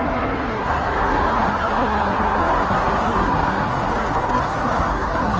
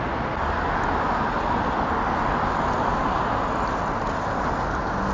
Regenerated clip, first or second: first